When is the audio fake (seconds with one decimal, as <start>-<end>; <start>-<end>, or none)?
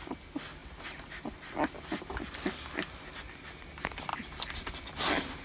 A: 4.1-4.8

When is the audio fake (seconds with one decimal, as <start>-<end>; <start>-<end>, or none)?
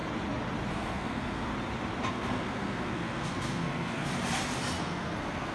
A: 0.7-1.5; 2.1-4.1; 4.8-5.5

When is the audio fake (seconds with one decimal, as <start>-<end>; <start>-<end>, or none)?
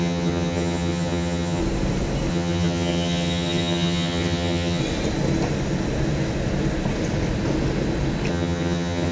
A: 0.0-1.6; 2.3-4.8; 8.3-9.1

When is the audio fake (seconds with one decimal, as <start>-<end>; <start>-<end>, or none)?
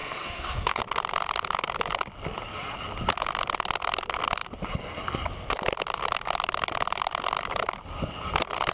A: 0.0-0.8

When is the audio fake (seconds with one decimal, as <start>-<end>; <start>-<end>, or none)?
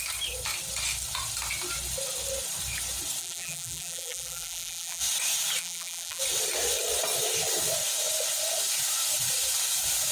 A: 3.2-5.0; 5.6-6.2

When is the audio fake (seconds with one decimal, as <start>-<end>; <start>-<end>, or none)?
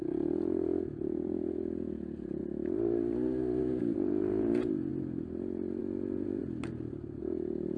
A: 0.0-2.4; 3.6-4.9; 5.8-6.4; 7.2-7.8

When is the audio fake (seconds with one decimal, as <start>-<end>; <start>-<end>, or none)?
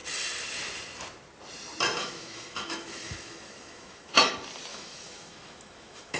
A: 2.0-4.3; 4.7-6.2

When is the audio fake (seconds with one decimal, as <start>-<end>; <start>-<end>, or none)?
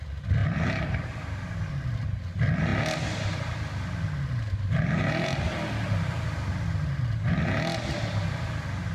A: none